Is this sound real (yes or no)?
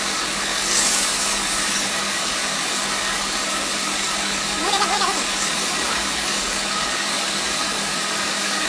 no